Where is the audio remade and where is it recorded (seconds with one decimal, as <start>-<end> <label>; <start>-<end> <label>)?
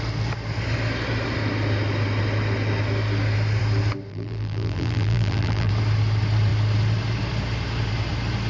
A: 0.0-4.1 recorded; 4.1-5.7 remade; 5.7-8.5 recorded